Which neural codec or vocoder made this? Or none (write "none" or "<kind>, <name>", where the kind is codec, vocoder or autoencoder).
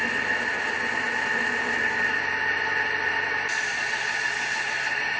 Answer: none